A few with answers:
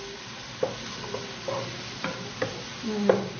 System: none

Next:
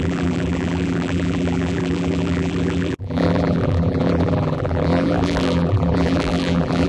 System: vocoder, BigVGAN v2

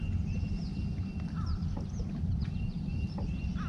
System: none